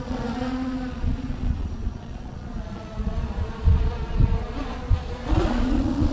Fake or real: fake